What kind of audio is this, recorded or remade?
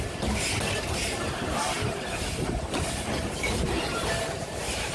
remade